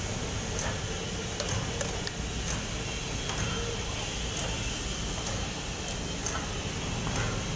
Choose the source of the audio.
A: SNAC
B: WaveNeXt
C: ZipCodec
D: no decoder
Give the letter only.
D